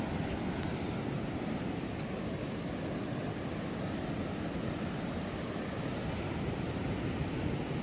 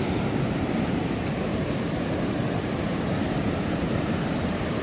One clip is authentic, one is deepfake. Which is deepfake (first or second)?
second